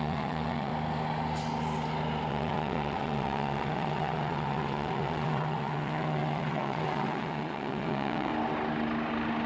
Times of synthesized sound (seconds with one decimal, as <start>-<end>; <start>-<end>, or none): 0.0-0.7; 2.3-8.3